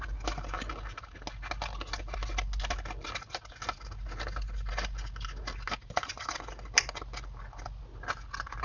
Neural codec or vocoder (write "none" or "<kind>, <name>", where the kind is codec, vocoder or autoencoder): none